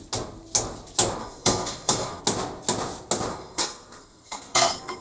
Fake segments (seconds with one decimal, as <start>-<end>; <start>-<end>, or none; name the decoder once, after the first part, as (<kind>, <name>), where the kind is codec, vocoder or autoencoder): 1.2-2.2 (codec, SNAC); 3.3-5.0